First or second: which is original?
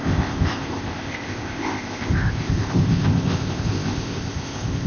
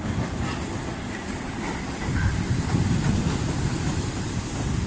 second